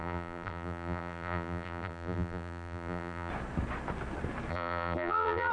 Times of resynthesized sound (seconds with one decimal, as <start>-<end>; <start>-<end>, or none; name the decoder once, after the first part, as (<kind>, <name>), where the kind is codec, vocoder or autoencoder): 0.0-3.3 (vocoder, BigVGAN v2); 4.5-5.5